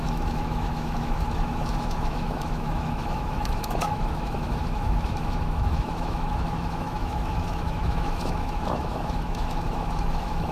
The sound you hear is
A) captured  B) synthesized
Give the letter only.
B